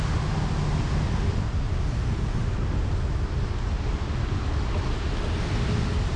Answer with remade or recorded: recorded